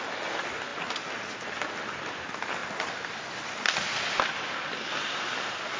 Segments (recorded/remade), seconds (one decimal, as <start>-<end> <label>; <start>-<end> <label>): 0.0-5.8 recorded